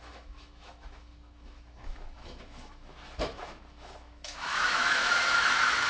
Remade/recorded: remade